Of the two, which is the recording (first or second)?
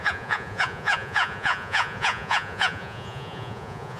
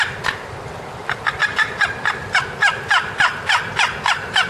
second